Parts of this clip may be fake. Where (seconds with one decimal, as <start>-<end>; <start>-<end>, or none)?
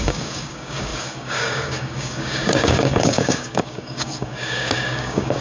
0.0-5.4